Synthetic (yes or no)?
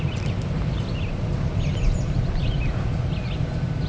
no